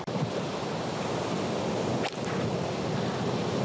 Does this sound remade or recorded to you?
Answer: remade